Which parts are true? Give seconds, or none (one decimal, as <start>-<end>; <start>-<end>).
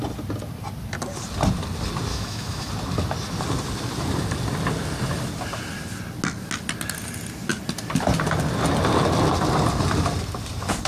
0.0-2.1; 2.7-10.9